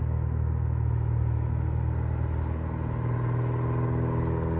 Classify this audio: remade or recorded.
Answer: recorded